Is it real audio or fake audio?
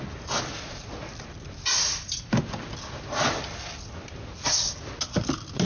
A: real